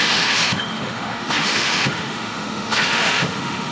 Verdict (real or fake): fake